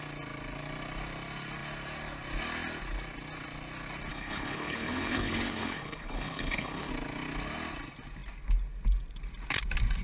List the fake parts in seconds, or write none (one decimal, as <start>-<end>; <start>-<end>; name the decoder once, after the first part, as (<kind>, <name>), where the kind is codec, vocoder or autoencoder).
4.1-6.9 (codec, HILCodec)

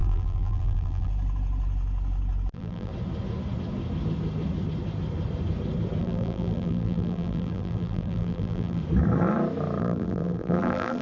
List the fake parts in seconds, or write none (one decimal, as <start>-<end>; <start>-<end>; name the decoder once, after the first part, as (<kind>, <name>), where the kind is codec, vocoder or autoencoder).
0.0-1.1 (vocoder, BigVGAN v2); 2.5-2.9; 6.0-8.8; 9.8-11.0

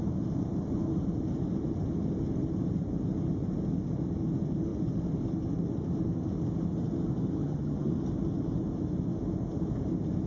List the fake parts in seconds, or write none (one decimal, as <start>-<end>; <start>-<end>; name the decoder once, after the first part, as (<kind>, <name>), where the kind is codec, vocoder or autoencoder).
7.4-7.9 (vocoder, HiFi-GAN)

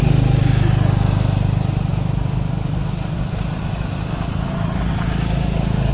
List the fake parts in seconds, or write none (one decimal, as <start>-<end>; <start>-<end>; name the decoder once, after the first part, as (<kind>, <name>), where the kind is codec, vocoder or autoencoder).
none